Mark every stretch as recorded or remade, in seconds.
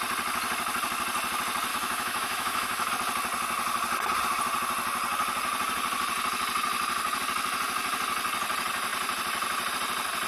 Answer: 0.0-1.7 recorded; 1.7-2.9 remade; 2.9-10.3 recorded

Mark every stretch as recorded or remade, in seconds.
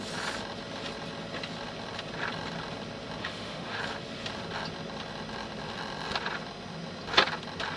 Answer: 0.0-3.2 recorded; 3.2-3.8 remade; 3.8-7.8 recorded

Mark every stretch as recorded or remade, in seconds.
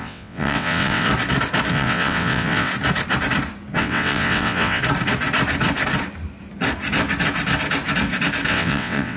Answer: 0.0-1.1 remade; 1.1-1.7 recorded; 1.7-2.7 remade; 2.7-3.8 recorded; 3.8-4.8 remade; 4.8-8.5 recorded; 8.5-9.2 remade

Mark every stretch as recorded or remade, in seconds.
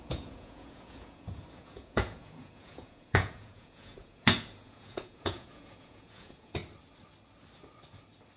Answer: 0.0-6.6 remade; 6.6-8.4 recorded